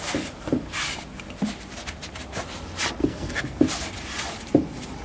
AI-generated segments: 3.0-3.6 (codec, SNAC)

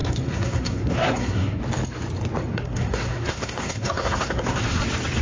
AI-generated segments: 0.0-1.6 (codec, SNAC); 2.5-4.8